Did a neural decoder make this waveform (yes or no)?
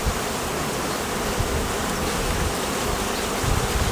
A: no